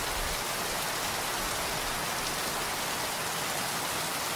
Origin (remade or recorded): recorded